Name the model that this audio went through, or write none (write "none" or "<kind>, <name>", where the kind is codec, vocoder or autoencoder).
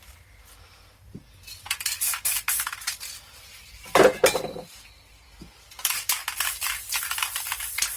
none